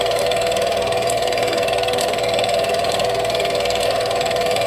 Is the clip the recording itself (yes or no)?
no